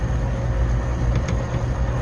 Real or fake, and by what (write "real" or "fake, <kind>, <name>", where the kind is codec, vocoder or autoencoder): real